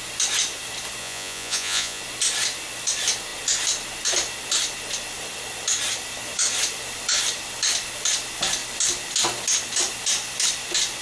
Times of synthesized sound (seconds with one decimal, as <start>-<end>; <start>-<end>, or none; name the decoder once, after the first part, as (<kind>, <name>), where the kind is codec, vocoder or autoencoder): 1.0-2.0 (vocoder, Vocos)